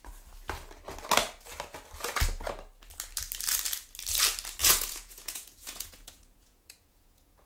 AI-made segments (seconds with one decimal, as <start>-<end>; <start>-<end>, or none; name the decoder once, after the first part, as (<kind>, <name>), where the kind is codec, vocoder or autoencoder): 4.6-7.5 (vocoder, Vocos)